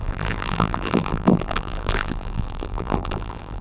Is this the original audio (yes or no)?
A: no